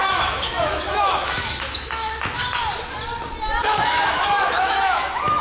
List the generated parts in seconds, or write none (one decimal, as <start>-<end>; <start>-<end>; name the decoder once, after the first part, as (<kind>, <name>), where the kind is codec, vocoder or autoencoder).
0.0-2.4 (autoencoder, DAC-VAE); 3.6-5.4

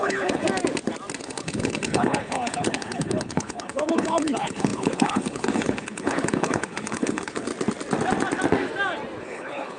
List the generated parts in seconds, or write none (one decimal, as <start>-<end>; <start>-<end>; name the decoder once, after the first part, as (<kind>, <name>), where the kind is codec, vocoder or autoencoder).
0.0-0.4 (codec, HILCodec); 1.2-7.5; 9.2-9.8

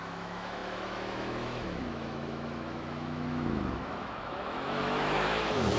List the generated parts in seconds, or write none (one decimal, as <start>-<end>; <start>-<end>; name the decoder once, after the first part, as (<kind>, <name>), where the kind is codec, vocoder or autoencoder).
0.0-5.8 (autoencoder, DAC-VAE)

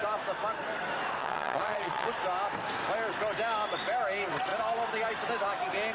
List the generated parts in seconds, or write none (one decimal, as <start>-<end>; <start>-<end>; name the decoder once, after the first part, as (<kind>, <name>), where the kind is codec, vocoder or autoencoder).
1.2-2.1 (vocoder, WaveNeXt)

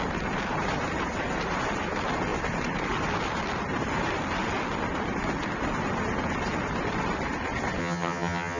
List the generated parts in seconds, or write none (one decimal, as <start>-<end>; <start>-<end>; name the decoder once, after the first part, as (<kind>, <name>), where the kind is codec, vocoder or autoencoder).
7.8-8.6 (vocoder, HiFi-GAN)

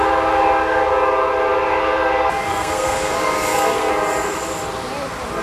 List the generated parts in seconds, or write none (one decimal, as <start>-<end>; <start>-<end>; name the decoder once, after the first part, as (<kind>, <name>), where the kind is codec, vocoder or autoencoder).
2.5-3.9 (codec, SNAC)

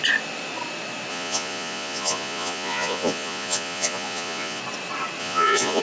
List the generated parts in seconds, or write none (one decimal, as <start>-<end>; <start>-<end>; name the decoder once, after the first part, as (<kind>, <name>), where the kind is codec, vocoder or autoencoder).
1.1-4.6 (vocoder, Vocos); 5.2-5.8